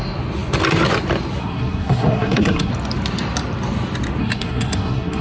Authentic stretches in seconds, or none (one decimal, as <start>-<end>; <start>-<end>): 0.0-1.4; 2.7-4.2